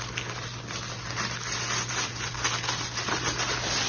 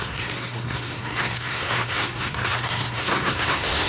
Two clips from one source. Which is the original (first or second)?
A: first